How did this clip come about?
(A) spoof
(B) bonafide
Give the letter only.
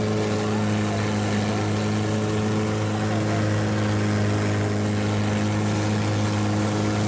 B